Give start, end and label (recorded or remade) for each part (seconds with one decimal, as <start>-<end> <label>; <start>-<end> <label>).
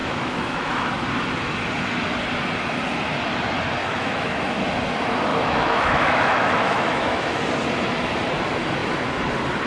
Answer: 0.0-0.9 remade; 0.9-3.8 recorded; 3.8-4.4 remade; 4.4-5.3 recorded; 5.3-7.4 remade; 7.4-9.7 recorded